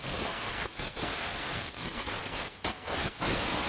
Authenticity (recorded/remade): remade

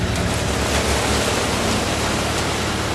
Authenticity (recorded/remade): recorded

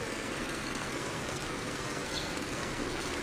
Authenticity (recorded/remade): remade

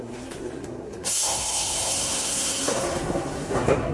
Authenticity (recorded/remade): remade